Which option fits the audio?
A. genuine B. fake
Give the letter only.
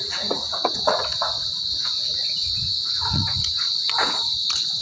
B